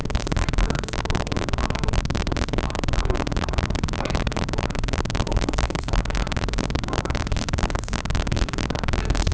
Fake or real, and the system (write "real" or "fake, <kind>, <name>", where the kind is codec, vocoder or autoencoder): fake, codec, SNAC